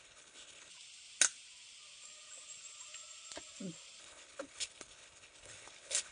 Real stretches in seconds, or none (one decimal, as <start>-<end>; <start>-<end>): 0.7-4.0